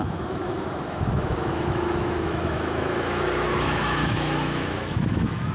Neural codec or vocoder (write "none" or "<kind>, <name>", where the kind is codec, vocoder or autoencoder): autoencoder, DAC-VAE